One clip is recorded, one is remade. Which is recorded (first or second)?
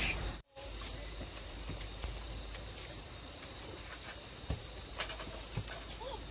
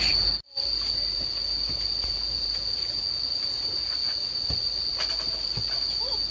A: second